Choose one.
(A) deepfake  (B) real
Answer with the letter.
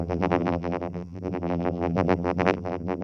A